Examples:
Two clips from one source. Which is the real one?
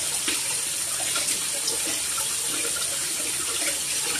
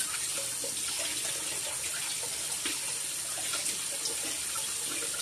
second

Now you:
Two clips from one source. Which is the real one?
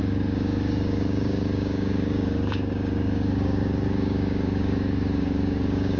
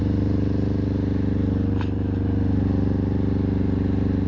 second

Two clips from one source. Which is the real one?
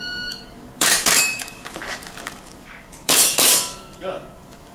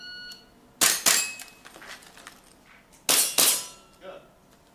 second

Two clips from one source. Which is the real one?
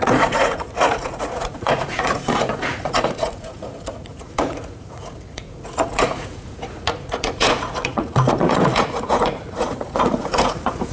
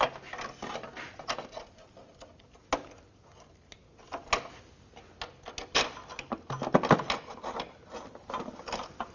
second